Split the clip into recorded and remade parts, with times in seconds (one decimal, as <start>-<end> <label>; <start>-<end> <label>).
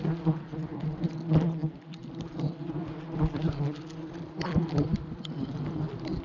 0.0-6.2 recorded